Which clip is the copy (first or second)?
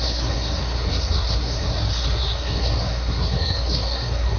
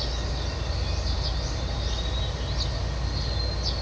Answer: first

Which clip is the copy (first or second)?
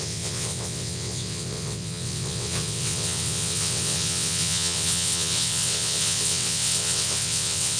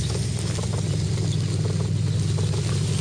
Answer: first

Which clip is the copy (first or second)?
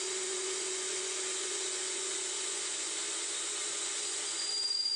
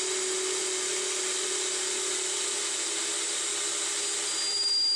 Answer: first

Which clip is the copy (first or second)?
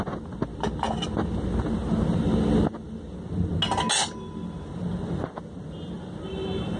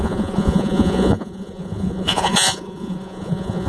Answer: second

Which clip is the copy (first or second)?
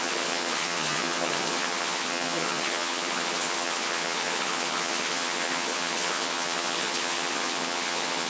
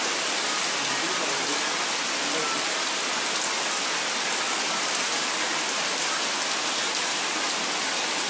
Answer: first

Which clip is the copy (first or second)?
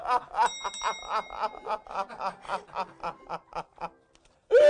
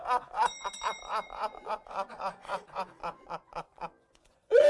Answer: second